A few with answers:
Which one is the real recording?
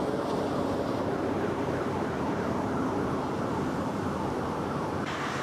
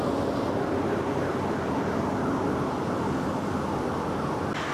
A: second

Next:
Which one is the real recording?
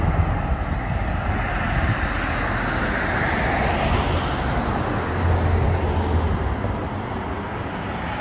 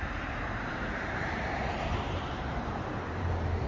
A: first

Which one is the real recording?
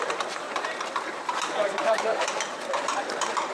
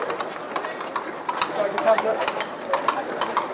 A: second